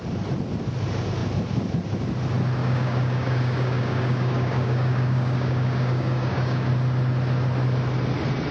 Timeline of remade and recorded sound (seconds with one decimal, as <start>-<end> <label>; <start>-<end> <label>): 0.0-2.6 recorded; 2.6-6.7 remade; 6.7-8.5 recorded

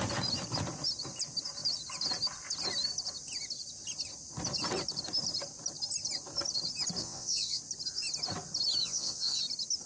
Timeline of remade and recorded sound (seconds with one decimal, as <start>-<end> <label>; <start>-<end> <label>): 0.0-7.0 recorded; 7.0-7.6 remade; 7.6-8.8 recorded; 8.8-9.4 remade; 9.4-9.9 recorded

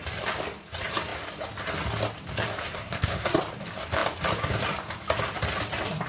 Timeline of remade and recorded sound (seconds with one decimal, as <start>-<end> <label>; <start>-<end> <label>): 0.0-2.6 recorded; 2.6-3.4 remade; 3.4-6.1 recorded

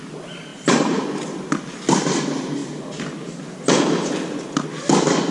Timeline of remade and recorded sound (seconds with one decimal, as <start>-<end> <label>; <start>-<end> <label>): 0.0-0.5 recorded; 0.5-1.0 remade; 1.0-2.6 recorded; 2.6-3.4 remade; 3.4-5.3 recorded